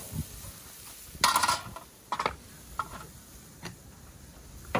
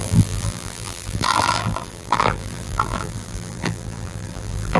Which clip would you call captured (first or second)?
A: first